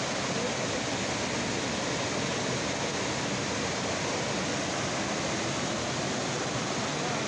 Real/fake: real